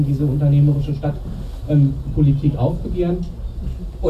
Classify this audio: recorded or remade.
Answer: recorded